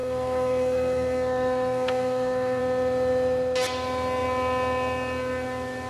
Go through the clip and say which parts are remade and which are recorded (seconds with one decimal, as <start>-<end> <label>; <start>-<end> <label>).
0.0-2.6 remade; 2.6-5.9 recorded